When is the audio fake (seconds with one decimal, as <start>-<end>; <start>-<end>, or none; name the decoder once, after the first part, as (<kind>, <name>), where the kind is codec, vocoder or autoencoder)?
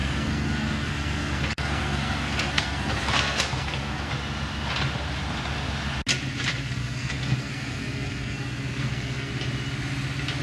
0.0-4.1 (codec, SNAC); 6.5-9.3